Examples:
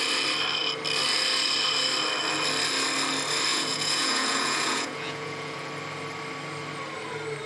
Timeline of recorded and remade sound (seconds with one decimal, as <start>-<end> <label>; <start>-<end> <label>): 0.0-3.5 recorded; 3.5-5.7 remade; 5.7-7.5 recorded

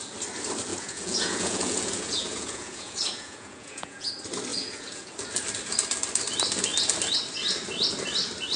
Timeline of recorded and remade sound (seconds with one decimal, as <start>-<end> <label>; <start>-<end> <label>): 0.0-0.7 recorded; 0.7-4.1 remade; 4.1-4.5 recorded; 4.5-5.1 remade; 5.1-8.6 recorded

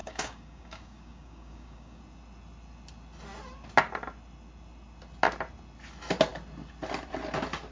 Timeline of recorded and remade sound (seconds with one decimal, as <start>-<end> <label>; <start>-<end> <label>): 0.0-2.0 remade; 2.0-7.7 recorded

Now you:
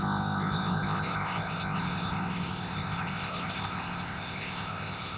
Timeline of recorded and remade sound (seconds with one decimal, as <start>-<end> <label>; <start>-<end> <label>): 0.0-5.2 remade